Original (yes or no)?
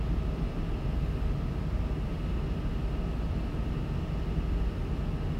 yes